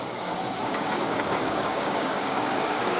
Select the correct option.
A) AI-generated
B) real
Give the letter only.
A